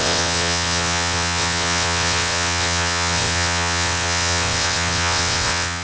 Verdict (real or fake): fake